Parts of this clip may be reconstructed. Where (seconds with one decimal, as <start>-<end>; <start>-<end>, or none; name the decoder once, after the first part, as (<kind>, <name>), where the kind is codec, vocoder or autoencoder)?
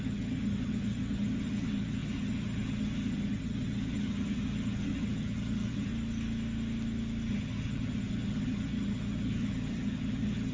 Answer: 0.0-5.9 (vocoder, HiFi-GAN); 7.3-10.5